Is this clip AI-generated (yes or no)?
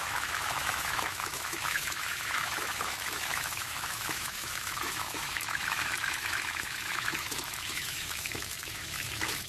yes